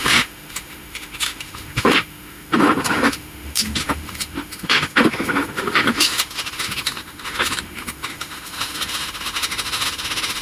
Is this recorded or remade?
remade